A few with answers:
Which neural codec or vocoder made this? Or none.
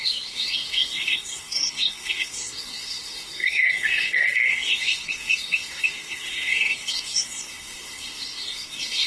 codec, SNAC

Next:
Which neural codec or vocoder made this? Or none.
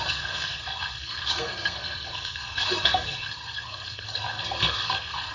codec, SNAC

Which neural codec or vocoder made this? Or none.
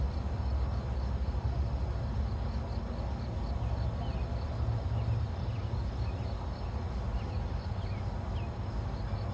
none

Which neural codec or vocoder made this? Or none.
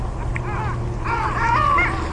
none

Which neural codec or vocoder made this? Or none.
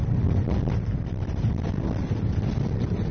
none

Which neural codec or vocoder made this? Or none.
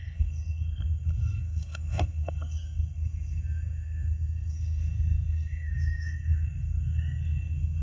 codec, SNAC